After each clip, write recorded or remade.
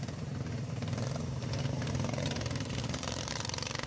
remade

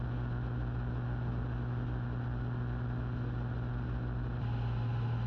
recorded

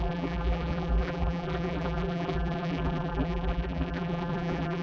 remade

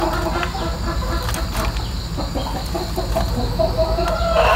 recorded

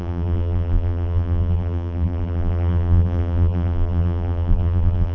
remade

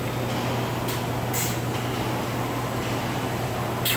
recorded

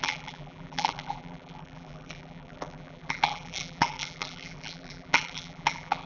remade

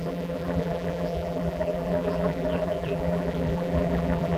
remade